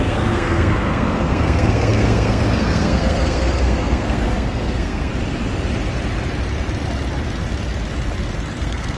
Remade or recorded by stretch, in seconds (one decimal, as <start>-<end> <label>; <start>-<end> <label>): 0.0-5.1 remade; 5.1-8.6 recorded; 8.6-9.0 remade